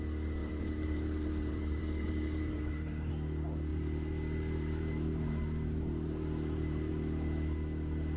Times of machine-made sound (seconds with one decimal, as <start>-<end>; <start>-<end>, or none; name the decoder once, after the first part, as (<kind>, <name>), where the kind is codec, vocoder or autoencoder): 0.4-3.1 (vocoder, BigVGAN v2); 3.7-6.9